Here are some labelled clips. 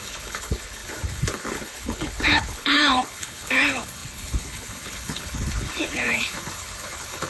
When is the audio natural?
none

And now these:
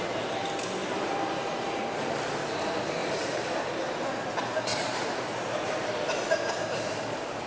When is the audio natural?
0.0-0.8; 1.9-3.0; 3.6-4.7

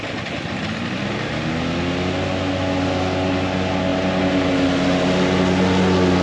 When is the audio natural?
0.0-6.2

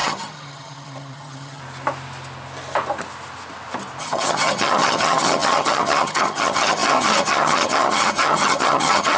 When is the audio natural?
1.6-4.0